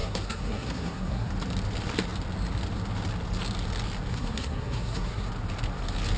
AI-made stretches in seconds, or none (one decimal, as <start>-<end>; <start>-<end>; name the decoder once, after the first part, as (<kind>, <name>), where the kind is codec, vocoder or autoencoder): 0.0-1.3 (codec, SNAC); 4.1-5.3